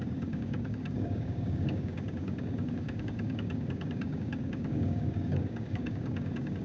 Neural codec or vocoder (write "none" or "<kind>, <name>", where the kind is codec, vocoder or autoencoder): codec, DAC